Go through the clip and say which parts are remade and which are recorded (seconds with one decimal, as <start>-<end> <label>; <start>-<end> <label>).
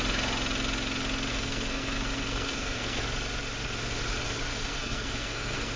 0.0-1.3 recorded; 1.3-3.0 remade; 3.0-4.5 recorded; 4.5-5.8 remade